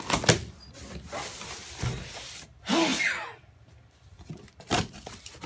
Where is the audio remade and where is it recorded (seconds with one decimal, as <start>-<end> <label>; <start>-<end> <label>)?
0.0-5.5 recorded